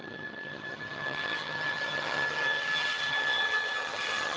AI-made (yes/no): yes